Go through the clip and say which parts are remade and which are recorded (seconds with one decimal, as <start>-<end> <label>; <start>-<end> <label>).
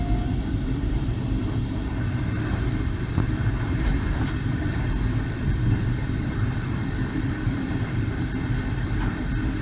0.0-1.4 remade; 1.4-2.1 recorded; 2.1-9.6 remade